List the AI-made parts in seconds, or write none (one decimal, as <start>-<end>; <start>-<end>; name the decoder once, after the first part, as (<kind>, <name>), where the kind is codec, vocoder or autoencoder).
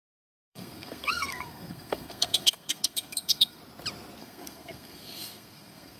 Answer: 0.0-3.6 (codec, SNAC); 4.2-6.0